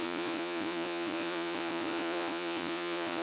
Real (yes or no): no